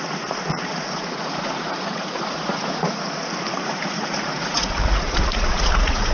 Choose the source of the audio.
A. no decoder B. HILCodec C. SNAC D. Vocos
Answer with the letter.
D